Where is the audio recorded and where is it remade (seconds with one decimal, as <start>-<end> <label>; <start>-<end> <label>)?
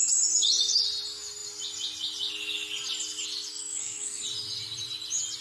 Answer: 0.0-3.5 recorded; 3.5-4.2 remade; 4.2-5.4 recorded